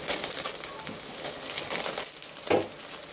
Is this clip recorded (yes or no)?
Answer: yes